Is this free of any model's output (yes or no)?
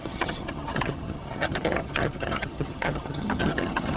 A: no